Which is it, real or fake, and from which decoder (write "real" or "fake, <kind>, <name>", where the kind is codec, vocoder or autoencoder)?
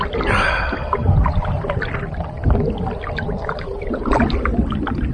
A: real